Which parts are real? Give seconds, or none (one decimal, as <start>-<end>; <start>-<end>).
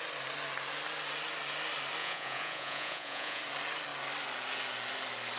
0.0-2.0; 3.4-5.4